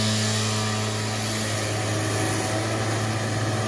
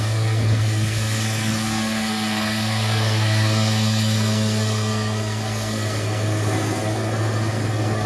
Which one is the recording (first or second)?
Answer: first